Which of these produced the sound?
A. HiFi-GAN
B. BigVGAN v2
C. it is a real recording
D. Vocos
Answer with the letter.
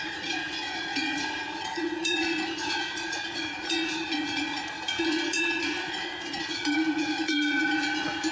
D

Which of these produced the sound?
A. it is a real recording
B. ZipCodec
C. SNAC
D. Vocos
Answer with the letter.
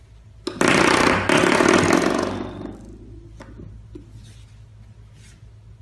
A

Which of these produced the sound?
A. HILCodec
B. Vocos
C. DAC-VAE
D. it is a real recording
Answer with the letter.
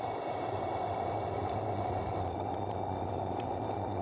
D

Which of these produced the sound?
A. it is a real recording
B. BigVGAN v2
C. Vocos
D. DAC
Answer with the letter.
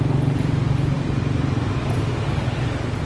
A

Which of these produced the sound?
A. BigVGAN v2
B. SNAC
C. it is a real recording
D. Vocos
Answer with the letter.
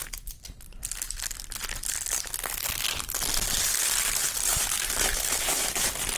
C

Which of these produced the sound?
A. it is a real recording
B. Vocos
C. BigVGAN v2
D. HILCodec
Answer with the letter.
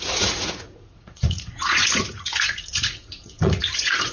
B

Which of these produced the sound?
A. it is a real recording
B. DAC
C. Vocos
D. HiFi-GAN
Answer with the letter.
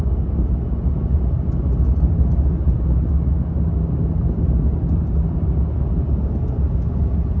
A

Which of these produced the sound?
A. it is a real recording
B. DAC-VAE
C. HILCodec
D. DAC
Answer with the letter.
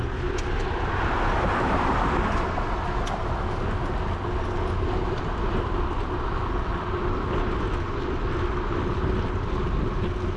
A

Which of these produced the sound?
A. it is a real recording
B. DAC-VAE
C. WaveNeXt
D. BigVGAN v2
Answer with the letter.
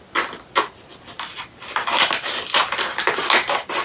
A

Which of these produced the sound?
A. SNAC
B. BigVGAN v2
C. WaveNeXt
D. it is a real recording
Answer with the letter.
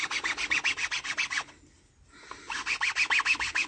D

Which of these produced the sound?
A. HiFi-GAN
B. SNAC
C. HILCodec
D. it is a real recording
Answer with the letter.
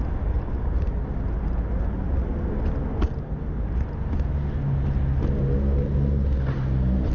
D